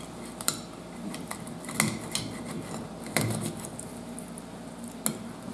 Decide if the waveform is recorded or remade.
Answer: recorded